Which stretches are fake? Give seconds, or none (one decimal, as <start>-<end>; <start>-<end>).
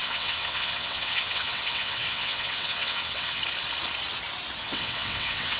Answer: 0.0-3.4; 4.6-5.6